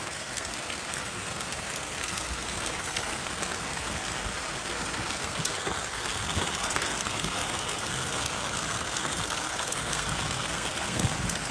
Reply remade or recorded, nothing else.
remade